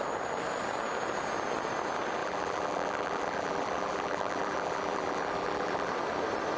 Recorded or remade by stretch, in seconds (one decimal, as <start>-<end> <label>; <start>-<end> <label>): 0.0-2.2 recorded; 2.2-5.9 remade; 5.9-6.6 recorded